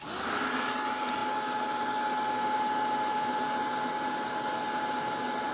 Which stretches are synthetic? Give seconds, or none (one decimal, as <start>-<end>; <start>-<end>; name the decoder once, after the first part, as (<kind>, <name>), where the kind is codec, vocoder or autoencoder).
none